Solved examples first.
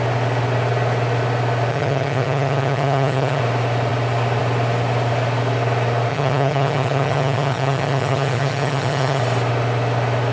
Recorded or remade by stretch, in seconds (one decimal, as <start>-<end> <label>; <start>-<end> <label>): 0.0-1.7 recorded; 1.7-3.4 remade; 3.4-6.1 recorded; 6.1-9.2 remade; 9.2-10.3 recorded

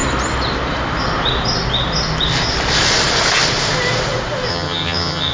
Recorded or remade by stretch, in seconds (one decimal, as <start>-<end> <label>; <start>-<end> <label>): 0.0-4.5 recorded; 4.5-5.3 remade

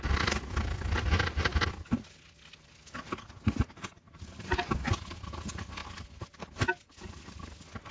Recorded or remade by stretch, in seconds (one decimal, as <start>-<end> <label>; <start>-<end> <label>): 0.0-7.9 recorded

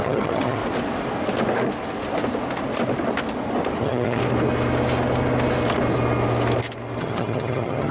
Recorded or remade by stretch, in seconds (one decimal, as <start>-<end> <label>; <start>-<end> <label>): 0.0-0.6 remade; 0.6-3.8 recorded; 3.8-4.2 remade; 4.2-7.0 recorded; 7.0-7.9 remade

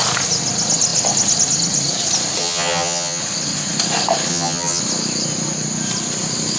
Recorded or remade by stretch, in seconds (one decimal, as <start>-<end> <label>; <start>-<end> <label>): 0.0-2.4 recorded; 2.4-3.2 remade; 3.2-4.3 recorded; 4.3-4.8 remade; 4.8-6.6 recorded